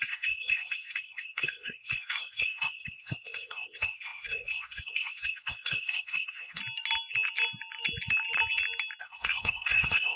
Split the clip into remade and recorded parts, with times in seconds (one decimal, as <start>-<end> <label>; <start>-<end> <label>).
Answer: 0.0-6.6 remade; 6.6-9.0 recorded; 9.0-10.2 remade